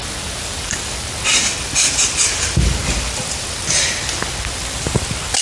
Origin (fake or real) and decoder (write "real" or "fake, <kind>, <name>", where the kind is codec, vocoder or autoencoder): real